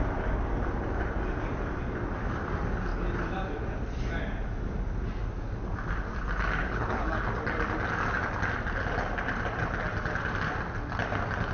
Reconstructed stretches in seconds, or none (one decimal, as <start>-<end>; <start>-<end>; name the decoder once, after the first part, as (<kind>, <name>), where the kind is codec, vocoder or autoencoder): 6.6-7.1 (codec, HILCodec)